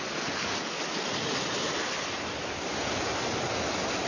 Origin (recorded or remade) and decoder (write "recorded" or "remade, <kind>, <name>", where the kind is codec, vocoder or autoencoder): recorded